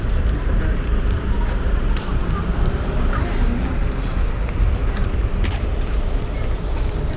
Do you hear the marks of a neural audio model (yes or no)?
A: yes